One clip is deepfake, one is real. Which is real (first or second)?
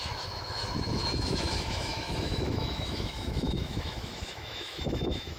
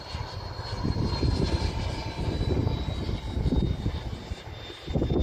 second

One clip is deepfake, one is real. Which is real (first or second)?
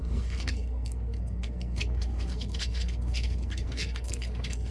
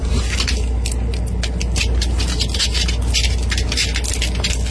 second